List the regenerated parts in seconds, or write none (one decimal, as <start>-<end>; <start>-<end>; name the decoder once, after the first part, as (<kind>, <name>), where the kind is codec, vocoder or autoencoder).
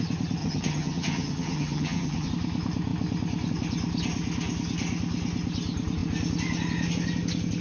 0.4-2.3 (vocoder, HiFi-GAN)